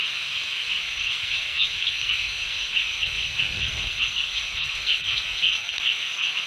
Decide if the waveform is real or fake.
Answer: fake